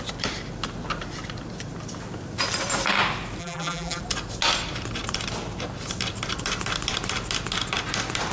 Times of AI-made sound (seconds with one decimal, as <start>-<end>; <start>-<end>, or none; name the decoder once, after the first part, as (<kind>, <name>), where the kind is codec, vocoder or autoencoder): 3.4-4.0 (vocoder, BigVGAN v2)